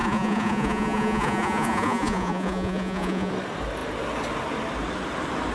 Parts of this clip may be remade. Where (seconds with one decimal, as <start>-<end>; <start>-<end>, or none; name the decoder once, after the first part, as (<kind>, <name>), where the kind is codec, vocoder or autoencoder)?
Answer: 0.0-3.3 (vocoder, Vocos)